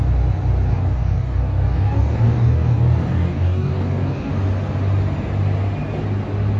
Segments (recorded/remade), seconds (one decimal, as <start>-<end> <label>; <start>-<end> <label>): 0.0-0.7 recorded; 0.7-4.3 remade; 4.3-6.6 recorded